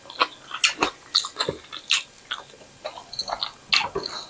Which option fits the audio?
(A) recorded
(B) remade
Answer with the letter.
A